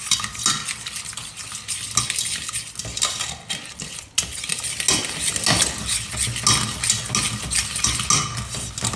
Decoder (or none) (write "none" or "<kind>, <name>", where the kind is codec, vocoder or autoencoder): none